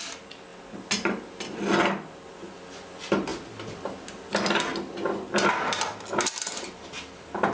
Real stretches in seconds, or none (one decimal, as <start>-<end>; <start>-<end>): 0.0-7.5